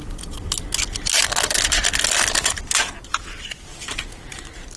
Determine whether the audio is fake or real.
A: real